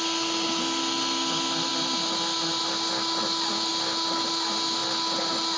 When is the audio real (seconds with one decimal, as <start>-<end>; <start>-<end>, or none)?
0.0-5.6